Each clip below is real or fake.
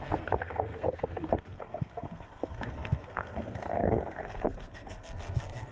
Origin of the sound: fake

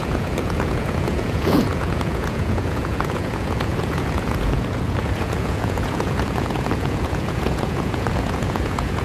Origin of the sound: fake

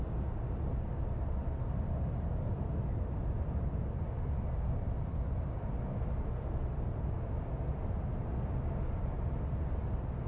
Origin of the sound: real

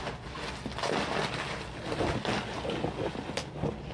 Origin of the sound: real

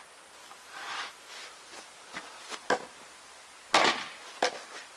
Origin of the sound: real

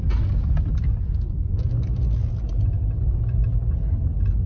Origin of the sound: real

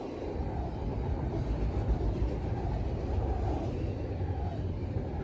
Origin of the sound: real